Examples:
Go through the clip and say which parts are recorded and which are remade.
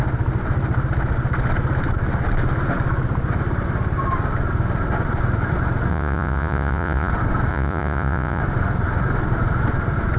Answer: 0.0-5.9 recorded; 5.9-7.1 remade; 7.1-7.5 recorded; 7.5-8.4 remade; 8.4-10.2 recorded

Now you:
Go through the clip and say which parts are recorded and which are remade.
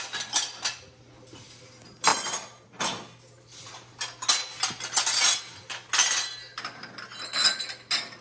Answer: 0.0-2.1 recorded; 2.1-2.8 remade; 2.8-8.2 recorded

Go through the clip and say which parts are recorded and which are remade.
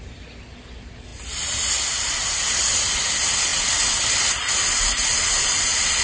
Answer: 0.0-6.0 recorded